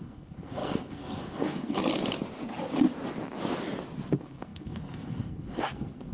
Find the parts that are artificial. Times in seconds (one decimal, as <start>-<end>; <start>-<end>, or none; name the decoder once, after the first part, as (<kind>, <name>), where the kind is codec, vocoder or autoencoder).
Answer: 0.0-1.8 (codec, SNAC); 4.1-6.1